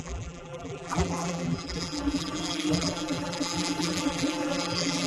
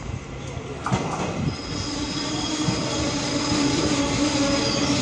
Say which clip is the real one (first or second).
second